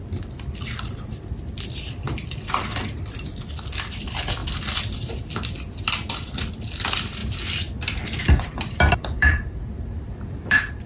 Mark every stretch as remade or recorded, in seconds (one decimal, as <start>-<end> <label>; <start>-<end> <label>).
0.0-4.4 remade; 4.4-6.1 recorded; 6.1-7.2 remade; 7.2-8.2 recorded; 8.2-10.9 remade